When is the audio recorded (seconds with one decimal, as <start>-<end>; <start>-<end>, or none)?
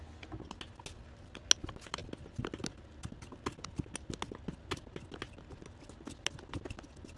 0.0-7.2